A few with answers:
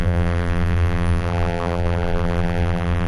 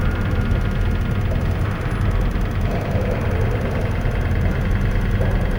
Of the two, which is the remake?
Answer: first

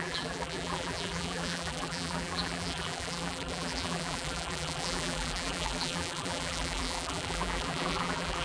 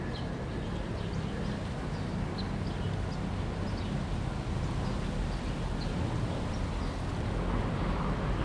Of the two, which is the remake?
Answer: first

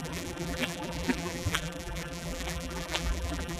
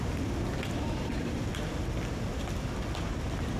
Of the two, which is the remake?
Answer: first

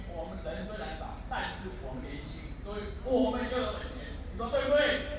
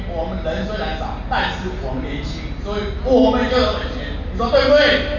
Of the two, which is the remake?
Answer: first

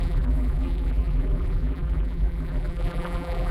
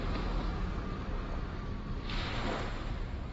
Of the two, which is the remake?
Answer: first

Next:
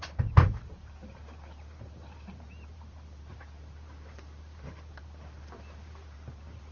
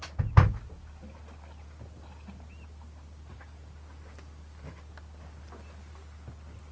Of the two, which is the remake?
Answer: first